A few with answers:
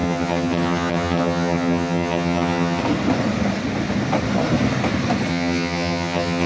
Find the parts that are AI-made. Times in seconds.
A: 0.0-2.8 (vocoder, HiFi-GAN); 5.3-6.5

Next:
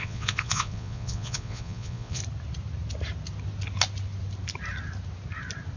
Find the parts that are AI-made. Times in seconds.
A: 0.0-2.2 (vocoder, Vocos)

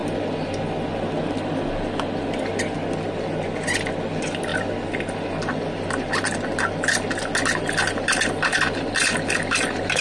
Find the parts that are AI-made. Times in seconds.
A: none